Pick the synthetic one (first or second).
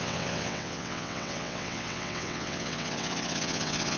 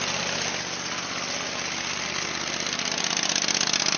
first